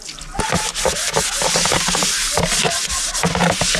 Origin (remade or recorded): recorded